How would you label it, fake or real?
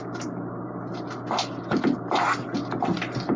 real